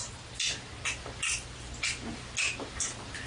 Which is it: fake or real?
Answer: real